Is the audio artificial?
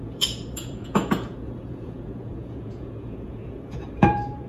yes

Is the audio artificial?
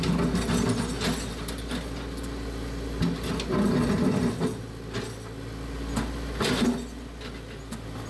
no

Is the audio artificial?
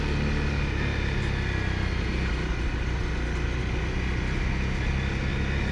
no